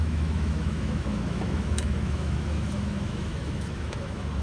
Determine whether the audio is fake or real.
fake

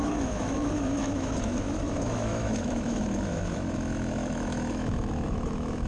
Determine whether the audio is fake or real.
fake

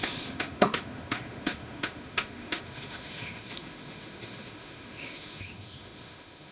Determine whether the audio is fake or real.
fake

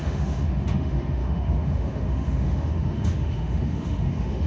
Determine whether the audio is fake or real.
fake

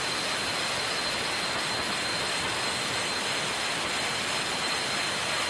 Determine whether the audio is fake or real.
real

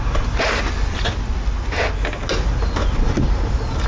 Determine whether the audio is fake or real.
real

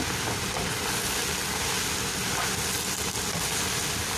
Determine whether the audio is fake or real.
real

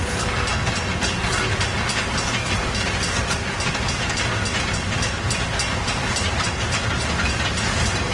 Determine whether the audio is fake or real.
real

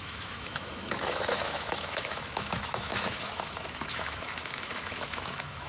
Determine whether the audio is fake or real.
fake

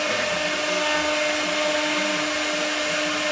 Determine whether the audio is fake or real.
real